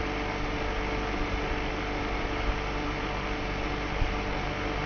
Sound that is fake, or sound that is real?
real